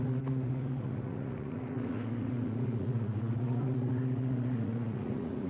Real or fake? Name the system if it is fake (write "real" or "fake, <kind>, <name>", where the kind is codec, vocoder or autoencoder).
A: fake, vocoder, Vocos